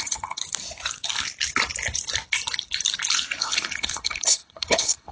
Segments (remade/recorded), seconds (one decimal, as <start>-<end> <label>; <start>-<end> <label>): 0.0-0.4 remade; 0.4-3.4 recorded; 3.4-5.1 remade